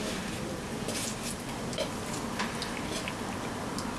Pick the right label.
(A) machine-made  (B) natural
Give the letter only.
B